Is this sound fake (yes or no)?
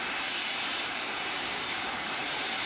yes